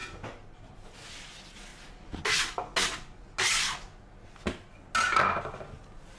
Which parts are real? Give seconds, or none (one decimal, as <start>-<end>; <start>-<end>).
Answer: 0.0-6.2

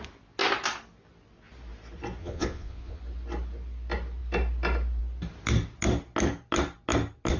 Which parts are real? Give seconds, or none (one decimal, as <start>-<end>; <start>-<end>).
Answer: 0.0-2.2; 3.0-7.4